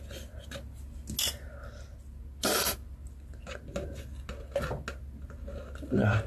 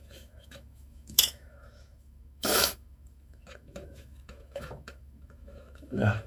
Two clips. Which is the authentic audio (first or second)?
first